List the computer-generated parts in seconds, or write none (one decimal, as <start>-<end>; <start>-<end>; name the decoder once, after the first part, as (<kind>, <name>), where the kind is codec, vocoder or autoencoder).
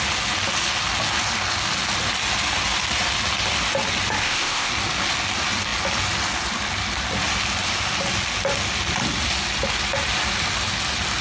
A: 4.2-4.7 (codec, ZipCodec)